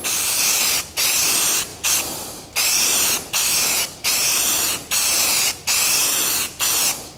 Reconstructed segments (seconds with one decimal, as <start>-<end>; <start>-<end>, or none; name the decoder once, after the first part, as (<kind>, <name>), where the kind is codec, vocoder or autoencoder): none